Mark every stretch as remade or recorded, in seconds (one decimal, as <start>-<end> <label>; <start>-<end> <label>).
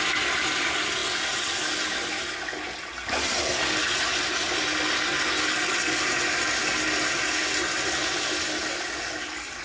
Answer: 0.0-9.6 recorded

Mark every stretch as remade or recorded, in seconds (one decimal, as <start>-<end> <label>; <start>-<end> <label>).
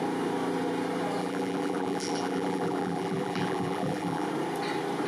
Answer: 0.0-1.2 recorded; 1.2-4.3 remade; 4.3-5.1 recorded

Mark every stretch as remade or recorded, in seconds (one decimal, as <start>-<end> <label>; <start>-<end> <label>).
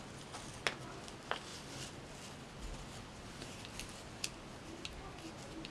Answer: 0.0-5.7 recorded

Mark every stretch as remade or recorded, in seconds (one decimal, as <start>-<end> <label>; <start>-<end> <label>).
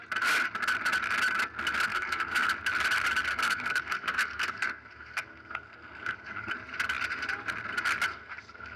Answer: 0.0-1.9 recorded; 1.9-2.5 remade; 2.5-3.3 recorded; 3.3-6.5 remade; 6.5-8.1 recorded; 8.1-8.8 remade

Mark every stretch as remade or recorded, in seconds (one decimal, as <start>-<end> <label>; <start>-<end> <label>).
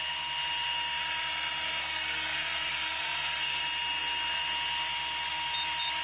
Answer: 0.0-1.8 recorded; 1.8-3.6 remade; 3.6-6.0 recorded